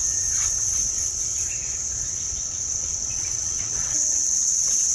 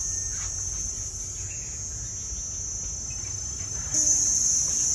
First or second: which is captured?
second